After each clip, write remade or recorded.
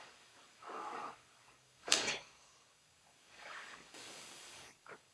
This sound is remade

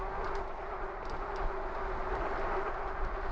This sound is recorded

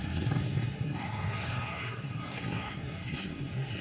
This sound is remade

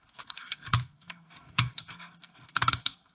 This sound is remade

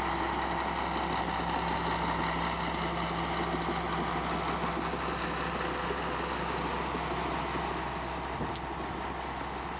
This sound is recorded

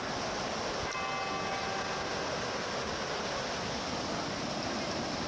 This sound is recorded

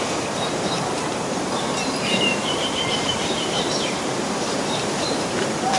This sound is remade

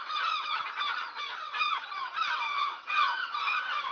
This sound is remade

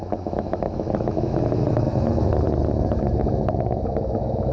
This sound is remade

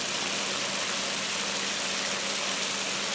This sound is recorded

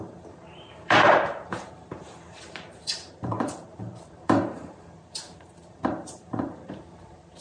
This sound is remade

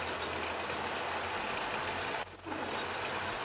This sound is recorded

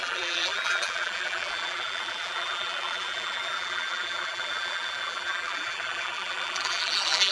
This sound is remade